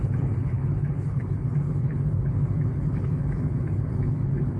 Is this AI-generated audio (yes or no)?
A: yes